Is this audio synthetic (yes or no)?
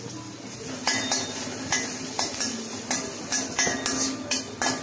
no